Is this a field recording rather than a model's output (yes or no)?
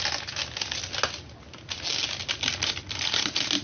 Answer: yes